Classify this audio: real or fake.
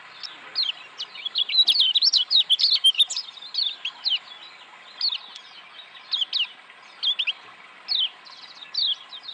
real